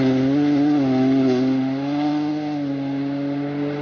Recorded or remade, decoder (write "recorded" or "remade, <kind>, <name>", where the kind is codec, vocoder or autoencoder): recorded